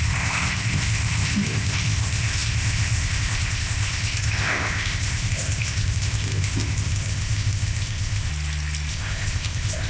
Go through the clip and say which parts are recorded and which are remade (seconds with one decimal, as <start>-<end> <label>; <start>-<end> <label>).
0.0-8.3 remade; 8.3-8.9 recorded; 8.9-9.9 remade